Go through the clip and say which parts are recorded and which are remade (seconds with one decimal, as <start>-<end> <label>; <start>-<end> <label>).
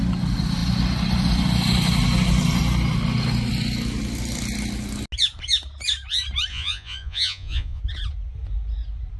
0.0-6.5 recorded; 6.5-7.8 remade; 7.8-9.2 recorded